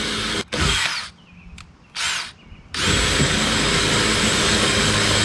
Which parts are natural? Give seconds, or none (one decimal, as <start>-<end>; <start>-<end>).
0.9-3.2

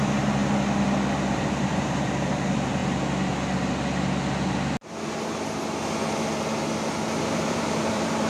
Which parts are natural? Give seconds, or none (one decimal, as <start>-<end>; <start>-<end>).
0.4-1.3; 2.8-7.2

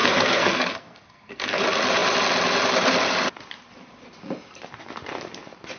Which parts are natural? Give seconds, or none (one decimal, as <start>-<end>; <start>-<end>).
1.6-5.8